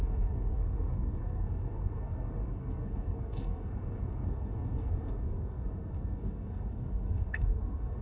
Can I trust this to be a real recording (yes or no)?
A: no